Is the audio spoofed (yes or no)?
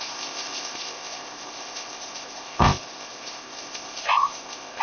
yes